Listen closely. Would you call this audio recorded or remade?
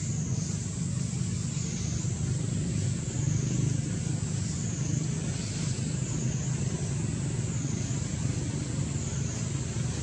recorded